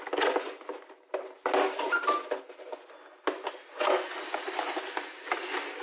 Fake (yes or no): no